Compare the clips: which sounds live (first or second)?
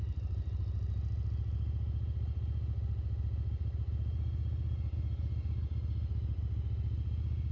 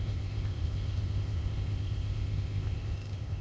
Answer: first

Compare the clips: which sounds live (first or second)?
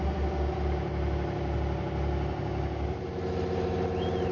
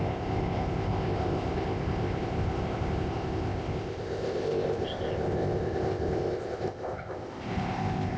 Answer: first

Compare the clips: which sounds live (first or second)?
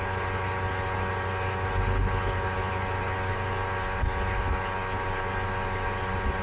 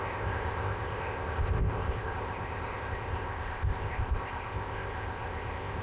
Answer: first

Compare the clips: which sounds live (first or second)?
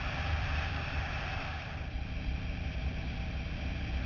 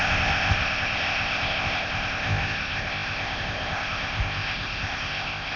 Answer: first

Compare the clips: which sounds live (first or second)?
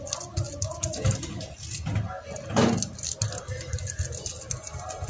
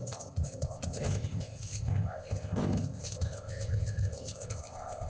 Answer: first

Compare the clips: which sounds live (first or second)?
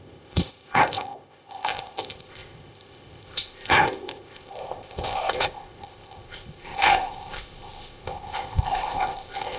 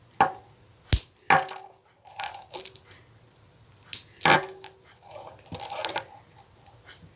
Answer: second